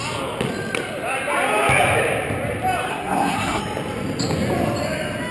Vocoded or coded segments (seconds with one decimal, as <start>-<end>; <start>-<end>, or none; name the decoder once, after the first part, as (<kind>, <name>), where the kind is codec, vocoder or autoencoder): 2.9-3.6 (codec, SNAC)